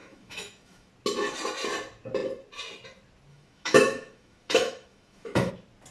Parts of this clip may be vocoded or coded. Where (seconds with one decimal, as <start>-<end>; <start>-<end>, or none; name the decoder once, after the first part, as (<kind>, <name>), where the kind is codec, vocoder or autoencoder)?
0.0-0.9 (autoencoder, DAC-VAE); 3.3-5.5